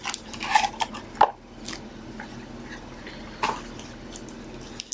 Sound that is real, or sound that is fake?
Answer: real